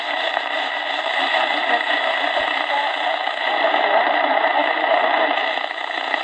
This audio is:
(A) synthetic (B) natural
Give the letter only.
B